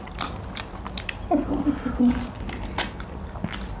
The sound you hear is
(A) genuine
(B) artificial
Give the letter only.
A